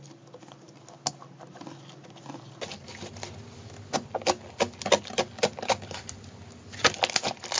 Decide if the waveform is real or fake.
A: real